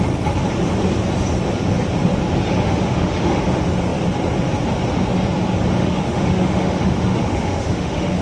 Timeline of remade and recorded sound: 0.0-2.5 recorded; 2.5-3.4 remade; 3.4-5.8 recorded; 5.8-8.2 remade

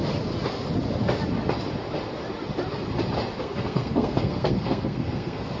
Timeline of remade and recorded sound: 0.0-3.4 recorded; 3.4-5.6 remade

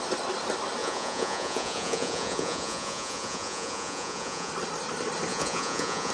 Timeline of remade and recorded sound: 0.0-0.8 recorded; 0.8-4.5 remade; 4.5-5.3 recorded; 5.3-6.1 remade

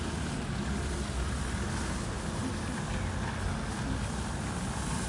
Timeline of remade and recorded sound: 0.0-5.1 recorded

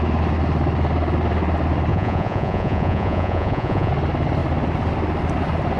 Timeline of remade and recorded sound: 0.0-1.9 recorded; 1.9-3.9 remade; 3.9-5.8 recorded

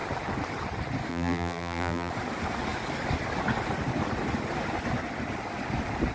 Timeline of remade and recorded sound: 0.0-1.1 recorded; 1.1-2.1 remade; 2.1-6.1 recorded

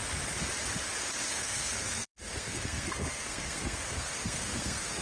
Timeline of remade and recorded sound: 0.0-1.3 recorded; 1.3-5.0 remade

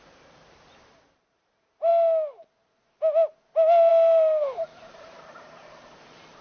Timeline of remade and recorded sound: 0.0-1.9 remade; 1.9-3.9 recorded; 3.9-6.4 remade